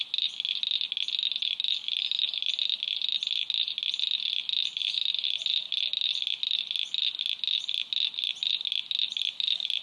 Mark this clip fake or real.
real